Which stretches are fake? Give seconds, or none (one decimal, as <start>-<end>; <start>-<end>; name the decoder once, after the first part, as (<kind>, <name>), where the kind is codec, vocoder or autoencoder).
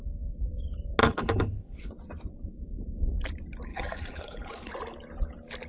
1.0-1.9 (codec, HILCodec); 3.7-4.7